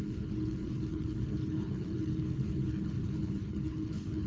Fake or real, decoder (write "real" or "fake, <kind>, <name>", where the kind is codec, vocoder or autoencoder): fake, codec, HILCodec